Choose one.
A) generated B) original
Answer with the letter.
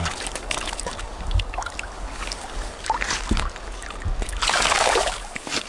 A